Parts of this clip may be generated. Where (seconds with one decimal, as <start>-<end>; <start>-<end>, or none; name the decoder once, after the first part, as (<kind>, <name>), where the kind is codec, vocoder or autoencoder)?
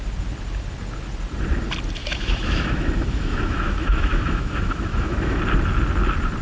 2.0-5.4 (autoencoder, DAC-VAE)